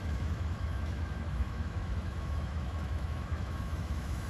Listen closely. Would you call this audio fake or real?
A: fake